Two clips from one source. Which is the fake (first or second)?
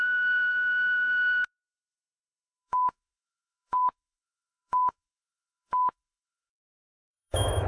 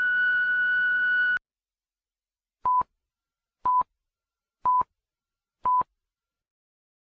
first